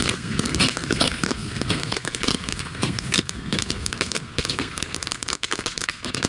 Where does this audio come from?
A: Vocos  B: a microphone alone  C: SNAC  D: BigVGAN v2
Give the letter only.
C